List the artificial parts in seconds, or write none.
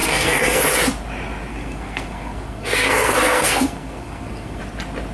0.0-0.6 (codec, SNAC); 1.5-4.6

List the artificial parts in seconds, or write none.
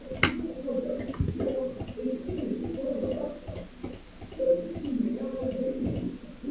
none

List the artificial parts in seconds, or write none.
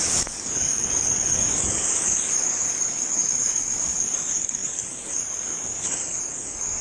0.0-6.8 (codec, DAC)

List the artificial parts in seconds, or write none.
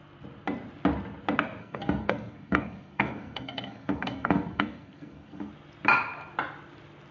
1.6-5.5 (codec, SNAC)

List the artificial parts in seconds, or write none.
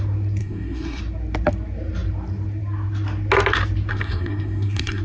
0.4-1.0 (codec, SNAC); 3.9-5.0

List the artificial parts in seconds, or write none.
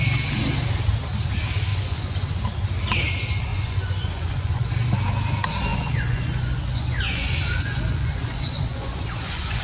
1.7-2.4 (vocoder, Vocos); 3.5-4.7; 5.7-9.6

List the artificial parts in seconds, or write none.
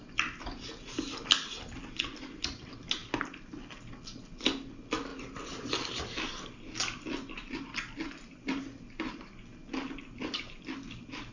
3.0-3.5 (vocoder, BigVGAN v2); 5.1-5.7